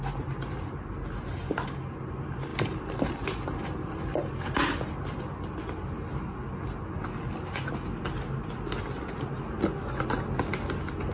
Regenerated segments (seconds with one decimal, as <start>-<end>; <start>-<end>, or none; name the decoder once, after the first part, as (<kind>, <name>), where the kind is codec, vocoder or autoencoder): none